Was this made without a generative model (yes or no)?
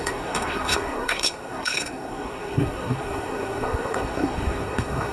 no